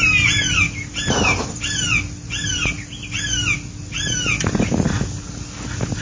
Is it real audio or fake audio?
real